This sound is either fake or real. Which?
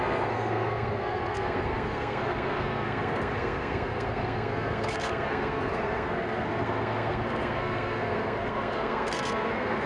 fake